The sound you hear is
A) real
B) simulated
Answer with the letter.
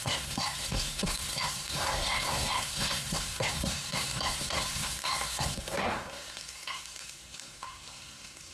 B